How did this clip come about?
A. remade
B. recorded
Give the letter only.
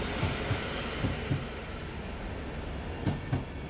B